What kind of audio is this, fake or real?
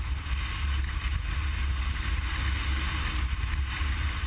real